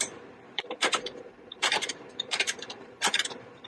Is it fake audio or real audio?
fake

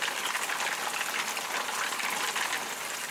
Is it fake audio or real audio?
real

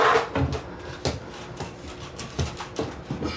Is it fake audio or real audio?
real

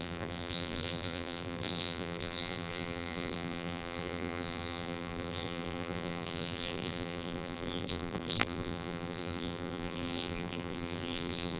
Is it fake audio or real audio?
fake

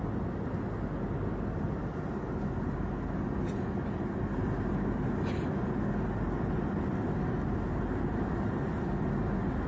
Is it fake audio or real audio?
real